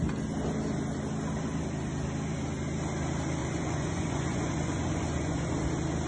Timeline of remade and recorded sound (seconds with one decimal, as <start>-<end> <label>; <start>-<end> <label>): 0.0-3.4 recorded; 3.4-5.5 remade; 5.5-6.1 recorded